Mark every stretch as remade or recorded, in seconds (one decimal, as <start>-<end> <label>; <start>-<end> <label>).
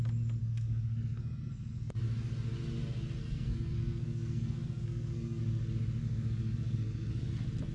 0.0-0.4 recorded; 0.4-2.0 remade; 2.0-3.2 recorded; 3.2-5.4 remade; 5.4-6.0 recorded; 6.0-7.3 remade; 7.3-7.7 recorded